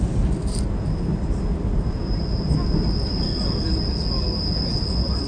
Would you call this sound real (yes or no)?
yes